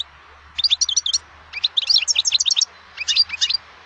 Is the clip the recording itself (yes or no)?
yes